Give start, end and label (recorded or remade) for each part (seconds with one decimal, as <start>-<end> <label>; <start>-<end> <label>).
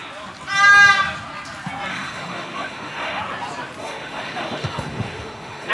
0.0-1.9 recorded; 1.9-3.2 remade; 3.2-3.8 recorded; 3.8-5.7 remade